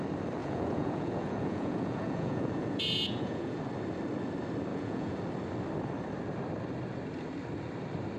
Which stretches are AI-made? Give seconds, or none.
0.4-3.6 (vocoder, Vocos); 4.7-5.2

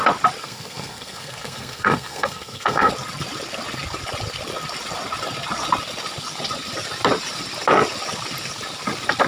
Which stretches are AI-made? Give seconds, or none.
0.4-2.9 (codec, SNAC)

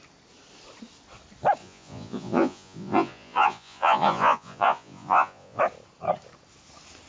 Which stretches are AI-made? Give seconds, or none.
1.6-5.6 (vocoder, Vocos)